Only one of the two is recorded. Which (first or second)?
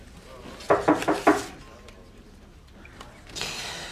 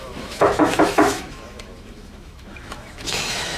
first